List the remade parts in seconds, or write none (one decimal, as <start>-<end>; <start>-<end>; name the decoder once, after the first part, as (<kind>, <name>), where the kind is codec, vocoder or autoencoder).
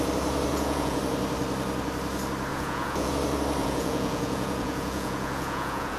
0.5-1.0 (vocoder, Vocos); 2.5-3.1; 3.6-6.0